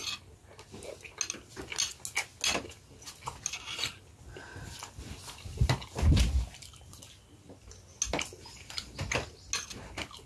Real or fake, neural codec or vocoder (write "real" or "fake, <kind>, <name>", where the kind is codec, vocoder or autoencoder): real